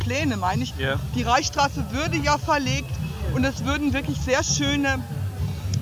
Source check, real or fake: real